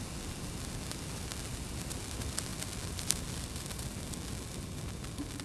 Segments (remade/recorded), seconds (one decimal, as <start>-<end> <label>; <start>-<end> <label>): 0.0-5.4 recorded